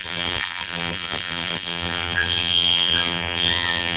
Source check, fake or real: fake